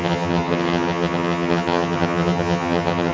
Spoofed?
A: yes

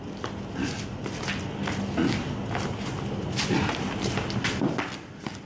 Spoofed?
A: no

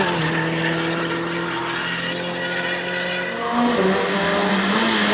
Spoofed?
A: no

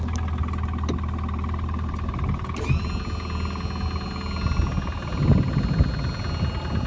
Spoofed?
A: no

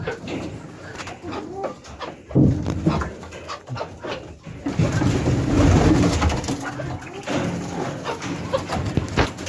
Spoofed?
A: no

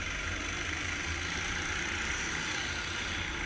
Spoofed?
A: no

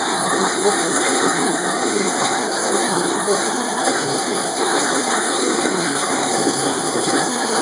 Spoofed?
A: yes